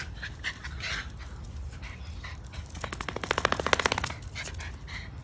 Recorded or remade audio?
recorded